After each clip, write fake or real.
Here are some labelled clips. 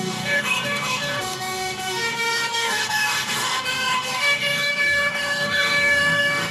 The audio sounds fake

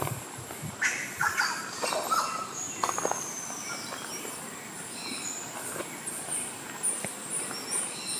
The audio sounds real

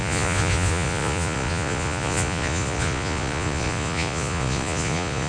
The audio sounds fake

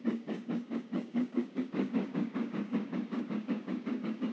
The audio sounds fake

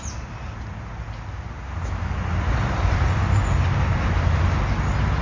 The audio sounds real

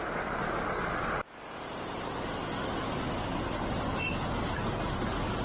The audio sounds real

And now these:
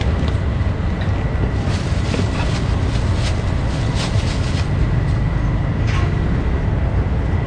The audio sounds real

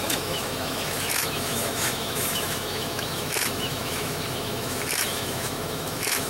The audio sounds fake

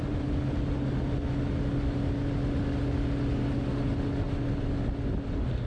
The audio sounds real